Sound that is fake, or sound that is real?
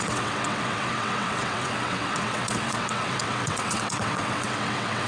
fake